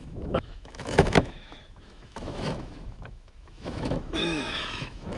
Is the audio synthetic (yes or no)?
yes